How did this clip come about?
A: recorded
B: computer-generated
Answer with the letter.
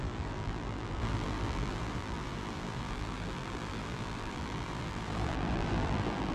B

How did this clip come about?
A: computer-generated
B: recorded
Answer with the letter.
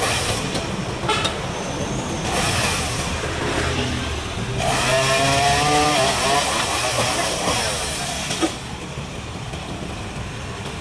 B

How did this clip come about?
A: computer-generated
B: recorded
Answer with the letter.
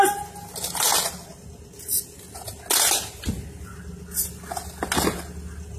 B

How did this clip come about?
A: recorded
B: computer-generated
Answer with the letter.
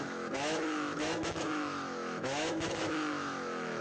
B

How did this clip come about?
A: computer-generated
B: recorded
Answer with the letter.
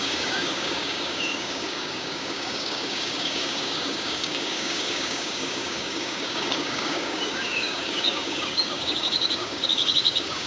A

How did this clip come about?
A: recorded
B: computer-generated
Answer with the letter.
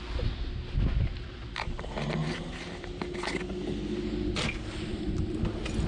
A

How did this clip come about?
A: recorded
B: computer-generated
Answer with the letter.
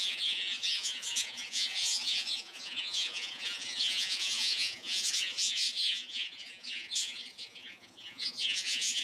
B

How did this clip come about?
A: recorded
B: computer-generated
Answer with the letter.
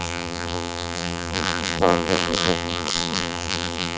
B